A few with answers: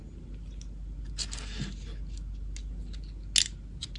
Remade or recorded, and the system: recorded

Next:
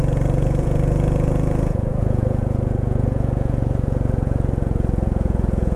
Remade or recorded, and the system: remade, vocoder, Vocos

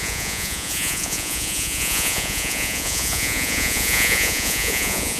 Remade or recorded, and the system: remade, vocoder, Vocos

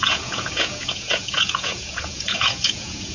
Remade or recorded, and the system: remade, vocoder, Vocos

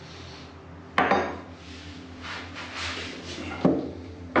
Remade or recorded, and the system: recorded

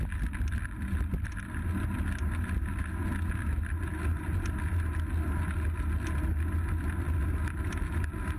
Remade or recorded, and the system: recorded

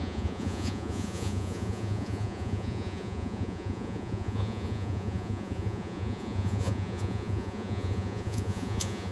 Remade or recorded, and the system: remade, vocoder, Vocos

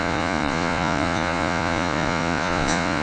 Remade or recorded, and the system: remade, vocoder, Vocos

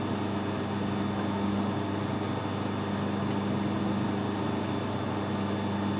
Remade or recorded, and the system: recorded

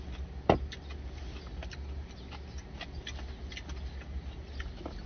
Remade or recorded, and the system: recorded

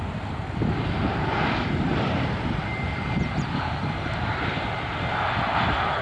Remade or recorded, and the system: recorded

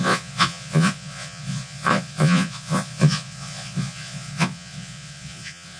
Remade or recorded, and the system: remade, vocoder, Vocos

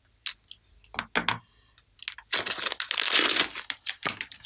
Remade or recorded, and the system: recorded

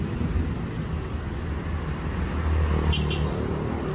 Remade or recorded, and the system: recorded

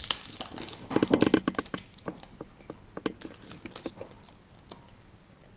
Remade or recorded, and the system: recorded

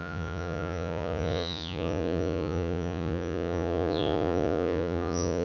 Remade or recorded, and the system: remade, vocoder, Vocos